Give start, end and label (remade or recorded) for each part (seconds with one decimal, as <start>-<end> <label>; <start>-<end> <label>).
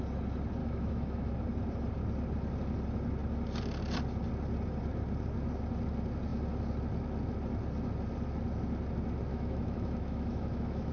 0.0-0.6 recorded; 0.6-1.3 remade; 1.3-9.3 recorded; 9.3-10.9 remade